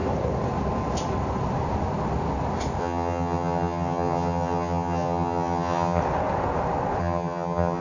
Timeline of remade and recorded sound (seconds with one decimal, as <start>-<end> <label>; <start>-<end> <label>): 0.0-2.8 recorded; 2.8-6.0 remade; 6.0-7.0 recorded; 7.0-7.8 remade